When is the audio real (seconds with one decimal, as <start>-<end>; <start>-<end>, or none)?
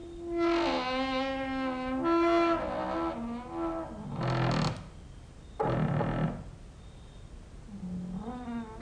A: 0.0-8.8